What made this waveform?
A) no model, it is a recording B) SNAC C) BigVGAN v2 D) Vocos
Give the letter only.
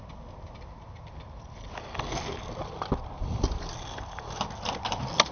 A